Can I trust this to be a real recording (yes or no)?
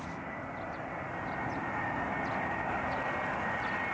yes